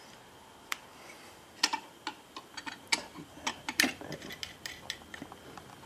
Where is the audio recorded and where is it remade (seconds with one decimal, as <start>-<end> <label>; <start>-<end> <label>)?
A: 0.0-5.9 recorded